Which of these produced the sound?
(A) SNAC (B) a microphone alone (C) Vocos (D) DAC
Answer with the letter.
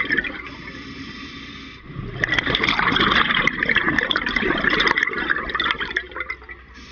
B